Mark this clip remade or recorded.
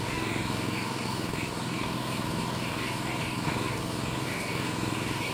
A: remade